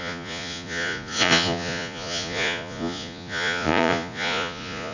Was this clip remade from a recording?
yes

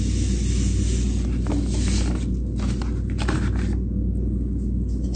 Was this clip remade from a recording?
no